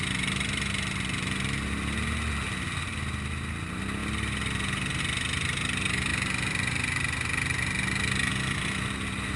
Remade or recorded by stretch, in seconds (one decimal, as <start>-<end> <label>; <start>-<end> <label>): 0.0-9.4 recorded